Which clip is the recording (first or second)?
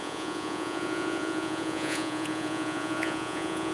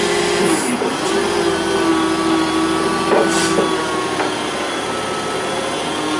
second